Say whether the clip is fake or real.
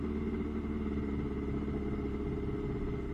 real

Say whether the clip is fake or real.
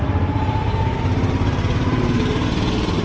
fake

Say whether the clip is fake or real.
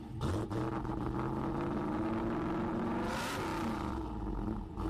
real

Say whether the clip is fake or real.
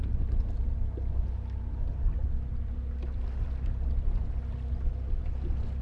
real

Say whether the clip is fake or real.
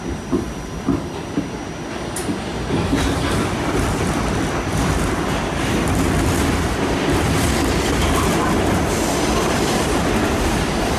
fake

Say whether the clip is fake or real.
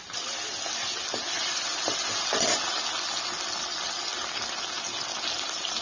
real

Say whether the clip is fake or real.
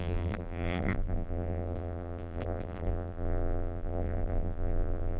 fake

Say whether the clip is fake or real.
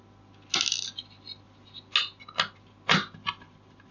real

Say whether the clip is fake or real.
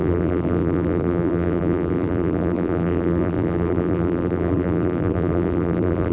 fake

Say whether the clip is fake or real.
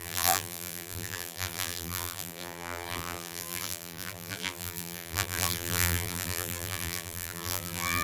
fake